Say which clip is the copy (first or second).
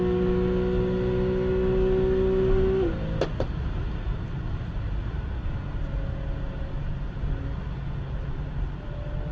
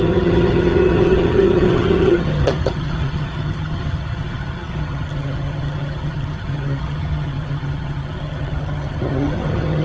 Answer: second